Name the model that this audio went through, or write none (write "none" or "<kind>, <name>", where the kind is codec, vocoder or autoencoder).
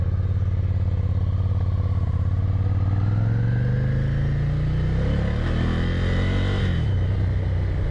none